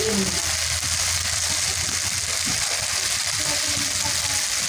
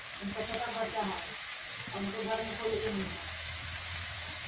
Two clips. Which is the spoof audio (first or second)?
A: second